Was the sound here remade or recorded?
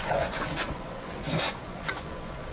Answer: remade